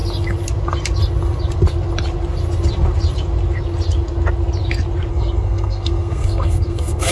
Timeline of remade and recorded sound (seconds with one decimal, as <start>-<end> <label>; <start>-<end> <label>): 0.0-5.1 recorded; 5.1-7.1 remade